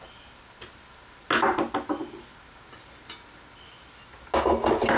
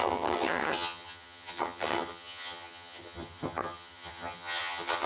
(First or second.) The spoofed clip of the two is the second